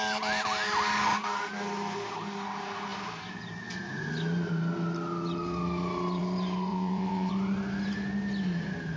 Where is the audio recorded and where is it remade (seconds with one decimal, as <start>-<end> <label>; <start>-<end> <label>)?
0.0-6.7 recorded; 6.7-7.3 remade; 7.3-9.0 recorded